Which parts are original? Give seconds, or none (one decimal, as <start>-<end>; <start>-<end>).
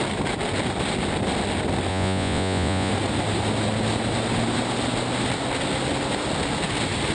0.0-1.9; 2.9-7.1